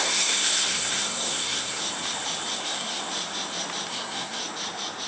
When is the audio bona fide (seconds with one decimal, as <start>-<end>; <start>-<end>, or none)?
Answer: 1.8-2.6; 3.0-3.9; 4.4-5.1